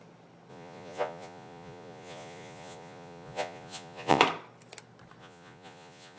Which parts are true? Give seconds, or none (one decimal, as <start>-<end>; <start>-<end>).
0.0-0.5; 4.2-5.2